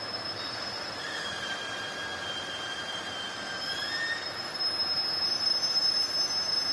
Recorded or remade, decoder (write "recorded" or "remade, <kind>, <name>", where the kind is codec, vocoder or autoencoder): recorded